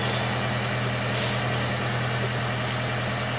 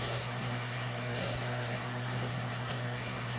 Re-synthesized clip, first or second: second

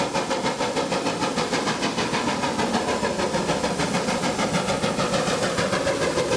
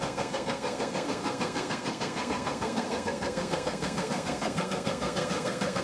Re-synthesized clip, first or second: second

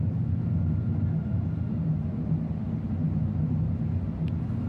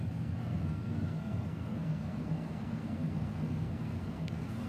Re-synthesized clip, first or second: second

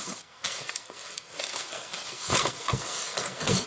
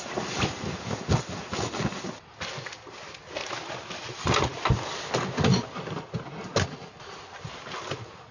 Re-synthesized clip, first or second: first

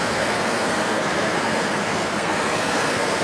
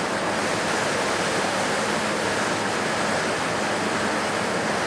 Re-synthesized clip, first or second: first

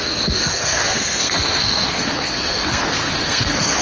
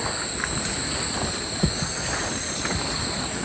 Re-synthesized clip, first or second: first